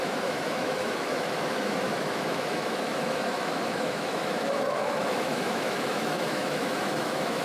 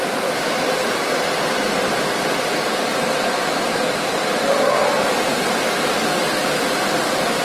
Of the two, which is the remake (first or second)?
first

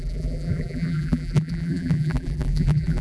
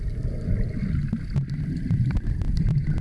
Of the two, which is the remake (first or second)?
first